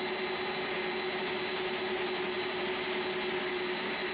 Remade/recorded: recorded